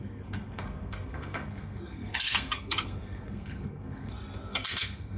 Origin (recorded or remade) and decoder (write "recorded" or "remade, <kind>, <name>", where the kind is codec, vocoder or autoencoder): remade, codec, SNAC